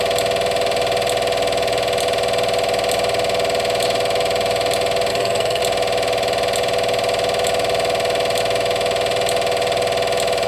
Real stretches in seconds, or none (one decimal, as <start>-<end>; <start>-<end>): 0.0-5.1; 5.6-10.5